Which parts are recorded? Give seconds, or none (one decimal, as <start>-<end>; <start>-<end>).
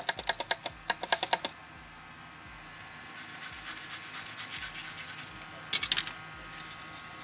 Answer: 0.0-7.2